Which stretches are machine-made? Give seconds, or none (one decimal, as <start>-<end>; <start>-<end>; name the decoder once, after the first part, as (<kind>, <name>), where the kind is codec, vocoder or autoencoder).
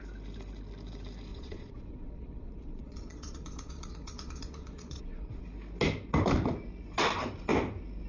1.3-5.4 (vocoder, Vocos)